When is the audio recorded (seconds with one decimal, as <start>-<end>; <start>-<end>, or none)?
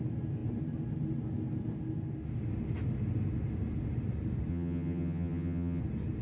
0.0-4.5; 5.8-6.2